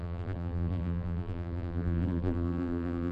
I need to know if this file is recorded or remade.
remade